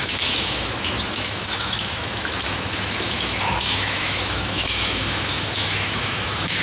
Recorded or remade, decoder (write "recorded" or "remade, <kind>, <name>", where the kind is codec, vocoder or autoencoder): remade, autoencoder, DAC-VAE